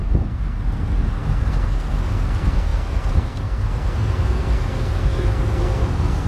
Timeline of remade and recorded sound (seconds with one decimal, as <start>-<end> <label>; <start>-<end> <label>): 0.0-6.3 remade